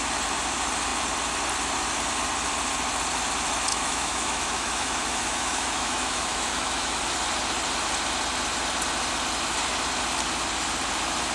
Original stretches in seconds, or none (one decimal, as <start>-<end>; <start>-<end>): 0.0-3.7; 7.0-11.3